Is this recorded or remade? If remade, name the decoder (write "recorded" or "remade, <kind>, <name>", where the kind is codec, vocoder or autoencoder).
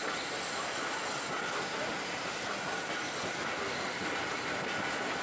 recorded